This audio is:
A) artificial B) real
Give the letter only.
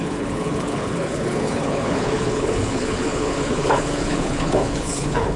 A